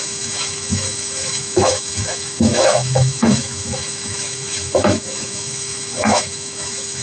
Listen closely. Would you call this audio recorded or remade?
remade